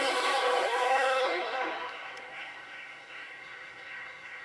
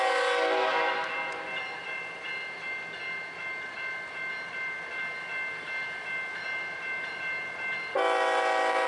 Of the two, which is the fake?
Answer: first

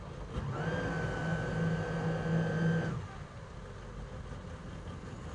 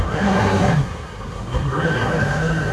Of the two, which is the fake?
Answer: second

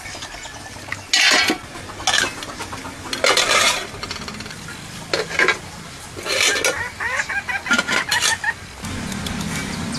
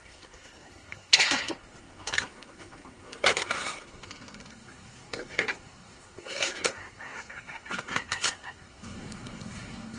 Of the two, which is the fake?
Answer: second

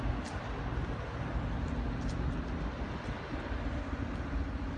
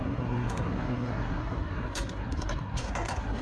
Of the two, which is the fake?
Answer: second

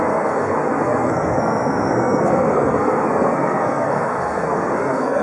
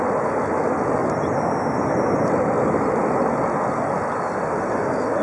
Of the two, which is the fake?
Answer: first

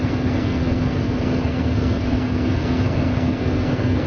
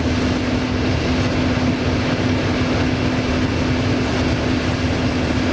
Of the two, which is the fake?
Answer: first